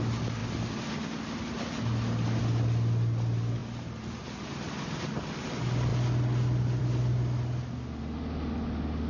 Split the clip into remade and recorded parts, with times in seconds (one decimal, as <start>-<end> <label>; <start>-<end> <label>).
0.0-9.1 recorded